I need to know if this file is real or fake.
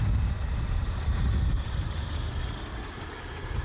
real